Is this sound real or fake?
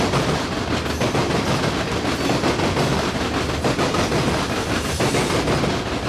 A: real